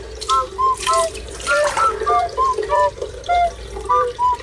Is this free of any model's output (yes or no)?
no